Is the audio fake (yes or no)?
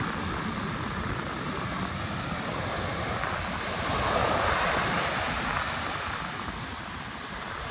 no